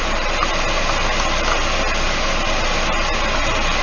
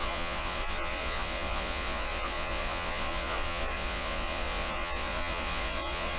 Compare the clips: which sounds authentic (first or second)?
first